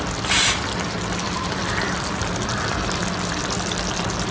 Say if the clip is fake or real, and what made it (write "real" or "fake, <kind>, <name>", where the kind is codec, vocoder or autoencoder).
real